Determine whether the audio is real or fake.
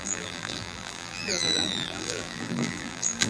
fake